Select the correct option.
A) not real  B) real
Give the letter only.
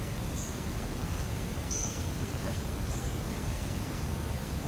A